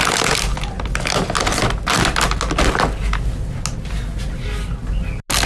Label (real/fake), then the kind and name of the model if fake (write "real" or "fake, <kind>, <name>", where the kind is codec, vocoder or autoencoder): real